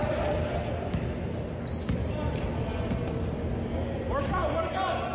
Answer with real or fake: real